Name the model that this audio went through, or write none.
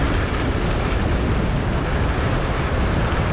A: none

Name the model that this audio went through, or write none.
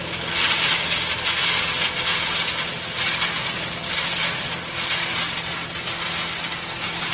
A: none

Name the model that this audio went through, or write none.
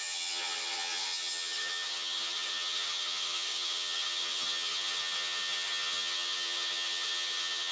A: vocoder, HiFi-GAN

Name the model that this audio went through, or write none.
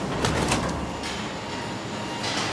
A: none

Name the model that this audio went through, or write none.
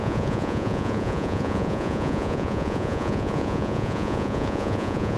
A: vocoder, Vocos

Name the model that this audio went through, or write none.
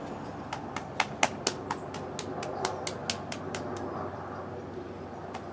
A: none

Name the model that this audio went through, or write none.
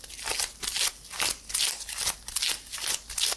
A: none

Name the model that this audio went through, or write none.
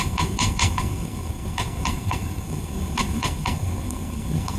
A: codec, SNAC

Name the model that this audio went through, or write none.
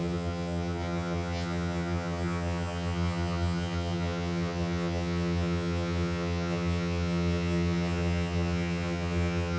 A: vocoder, HiFi-GAN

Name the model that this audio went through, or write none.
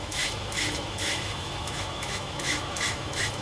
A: autoencoder, DAC-VAE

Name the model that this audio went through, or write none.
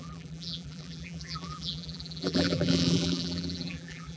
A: vocoder, BigVGAN v2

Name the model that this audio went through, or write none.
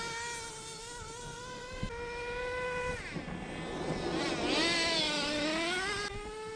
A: none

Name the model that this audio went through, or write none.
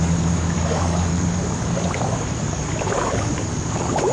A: codec, DAC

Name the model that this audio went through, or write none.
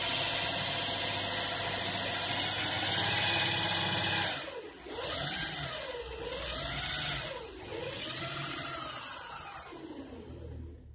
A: none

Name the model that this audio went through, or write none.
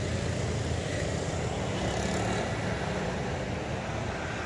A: none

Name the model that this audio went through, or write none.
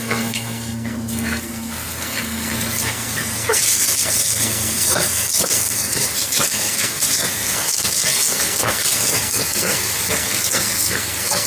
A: codec, SNAC